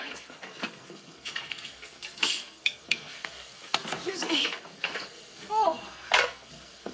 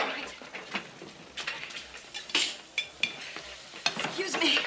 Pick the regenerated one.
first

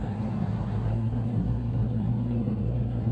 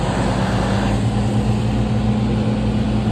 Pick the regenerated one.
first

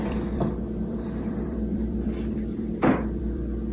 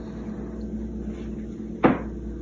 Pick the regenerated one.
first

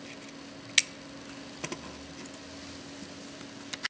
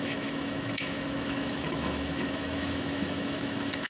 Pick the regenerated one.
second